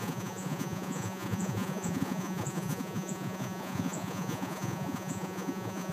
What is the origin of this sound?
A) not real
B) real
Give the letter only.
A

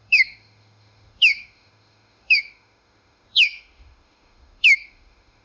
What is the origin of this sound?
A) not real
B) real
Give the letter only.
A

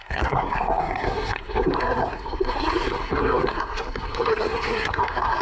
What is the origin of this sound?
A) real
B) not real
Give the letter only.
B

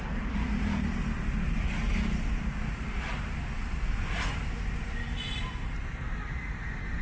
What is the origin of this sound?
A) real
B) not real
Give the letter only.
A